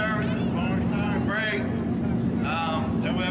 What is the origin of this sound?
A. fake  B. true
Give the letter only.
B